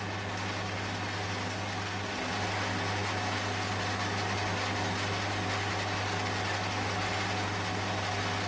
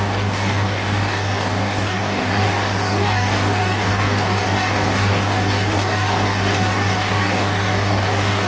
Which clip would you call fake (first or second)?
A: second